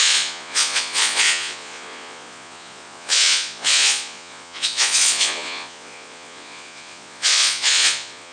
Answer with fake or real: fake